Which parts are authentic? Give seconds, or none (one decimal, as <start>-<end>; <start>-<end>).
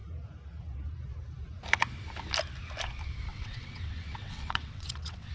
0.0-3.3